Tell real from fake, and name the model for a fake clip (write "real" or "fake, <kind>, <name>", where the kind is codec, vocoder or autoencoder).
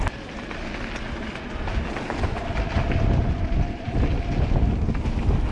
real